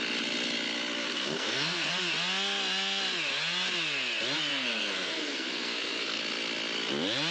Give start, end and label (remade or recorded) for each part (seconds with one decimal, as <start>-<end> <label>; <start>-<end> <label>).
0.0-1.0 recorded; 1.0-1.9 remade; 1.9-4.5 recorded; 4.5-6.2 remade; 6.2-7.3 recorded

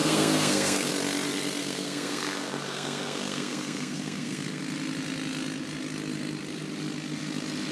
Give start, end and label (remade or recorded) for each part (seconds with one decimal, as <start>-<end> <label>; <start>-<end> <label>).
0.0-0.9 remade; 0.9-1.6 recorded; 1.6-4.6 remade; 4.6-7.7 recorded

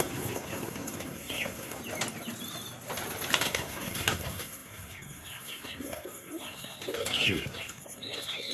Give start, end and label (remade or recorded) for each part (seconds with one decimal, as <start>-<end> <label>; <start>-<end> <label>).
0.0-1.8 remade; 1.8-3.4 recorded; 3.4-8.5 remade

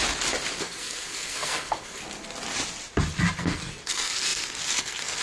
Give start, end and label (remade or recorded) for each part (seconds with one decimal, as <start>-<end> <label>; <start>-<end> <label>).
0.0-0.6 recorded; 0.6-2.0 remade; 2.0-3.4 recorded; 3.4-5.2 remade